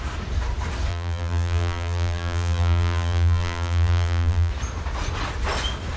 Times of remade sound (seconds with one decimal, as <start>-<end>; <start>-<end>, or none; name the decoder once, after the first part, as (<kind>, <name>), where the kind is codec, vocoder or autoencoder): 0.9-4.5 (vocoder, BigVGAN v2)